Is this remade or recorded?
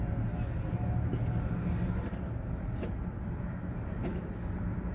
recorded